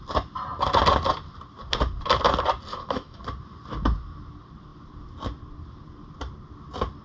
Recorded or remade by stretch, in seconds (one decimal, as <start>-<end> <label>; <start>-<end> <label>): 0.0-2.7 recorded; 2.7-3.2 remade; 3.2-7.0 recorded